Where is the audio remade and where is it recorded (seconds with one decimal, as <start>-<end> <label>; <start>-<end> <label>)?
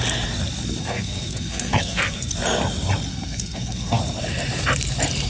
0.0-0.8 recorded; 0.8-2.3 remade; 2.3-3.1 recorded; 3.1-4.0 remade; 4.0-5.3 recorded